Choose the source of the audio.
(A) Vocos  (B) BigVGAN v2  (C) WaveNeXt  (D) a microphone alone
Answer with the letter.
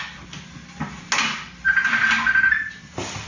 D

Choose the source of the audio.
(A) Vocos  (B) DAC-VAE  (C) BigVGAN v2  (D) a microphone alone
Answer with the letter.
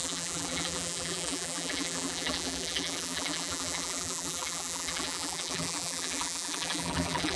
C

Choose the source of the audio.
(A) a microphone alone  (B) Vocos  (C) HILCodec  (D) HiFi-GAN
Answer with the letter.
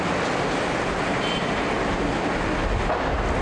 A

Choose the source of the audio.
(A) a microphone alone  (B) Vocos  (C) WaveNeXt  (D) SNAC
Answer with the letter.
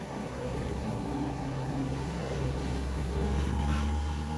D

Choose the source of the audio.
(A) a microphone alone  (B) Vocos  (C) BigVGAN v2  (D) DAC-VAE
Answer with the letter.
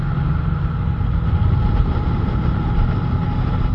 A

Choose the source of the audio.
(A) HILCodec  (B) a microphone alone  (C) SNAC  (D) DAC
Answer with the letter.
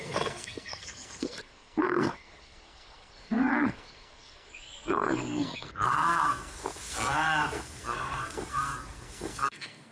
C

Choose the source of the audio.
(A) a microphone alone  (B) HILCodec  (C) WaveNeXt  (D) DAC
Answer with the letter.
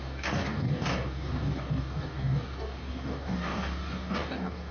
D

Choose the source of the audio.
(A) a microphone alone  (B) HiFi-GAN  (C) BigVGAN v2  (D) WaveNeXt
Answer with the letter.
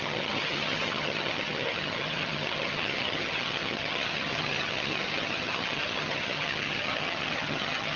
B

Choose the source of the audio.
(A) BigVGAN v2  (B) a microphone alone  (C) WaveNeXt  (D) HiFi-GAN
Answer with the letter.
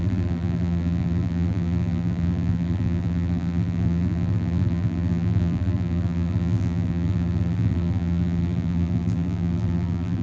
A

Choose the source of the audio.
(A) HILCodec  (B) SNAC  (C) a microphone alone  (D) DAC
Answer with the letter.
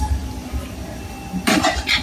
C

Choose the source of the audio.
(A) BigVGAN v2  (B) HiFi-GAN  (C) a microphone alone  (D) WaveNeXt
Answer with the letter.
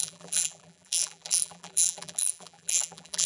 A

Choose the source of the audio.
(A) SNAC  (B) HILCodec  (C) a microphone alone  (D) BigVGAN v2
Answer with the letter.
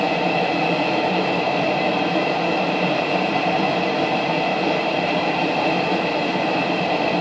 D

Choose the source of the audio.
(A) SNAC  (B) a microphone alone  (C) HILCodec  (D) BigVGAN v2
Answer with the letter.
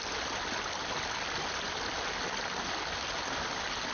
B